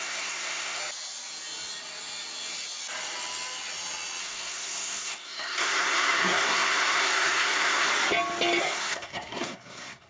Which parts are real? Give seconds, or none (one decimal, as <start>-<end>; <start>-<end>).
0.8-4.2; 7.9-8.6